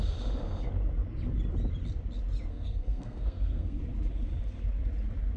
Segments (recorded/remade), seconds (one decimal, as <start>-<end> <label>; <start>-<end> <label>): 0.0-2.5 recorded; 2.5-3.8 remade; 3.8-5.4 recorded